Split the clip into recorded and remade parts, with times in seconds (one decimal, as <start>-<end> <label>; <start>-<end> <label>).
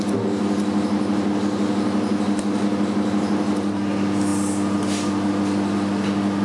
0.0-6.4 recorded